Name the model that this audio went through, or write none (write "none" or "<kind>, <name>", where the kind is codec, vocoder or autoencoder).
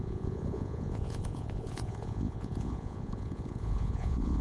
vocoder, Vocos